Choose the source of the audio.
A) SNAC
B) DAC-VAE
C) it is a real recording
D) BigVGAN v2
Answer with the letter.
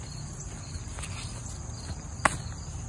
C